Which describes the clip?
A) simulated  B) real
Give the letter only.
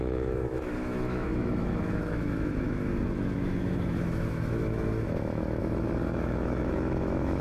A